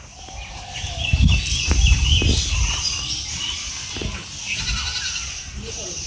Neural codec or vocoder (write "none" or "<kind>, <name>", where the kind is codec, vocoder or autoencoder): none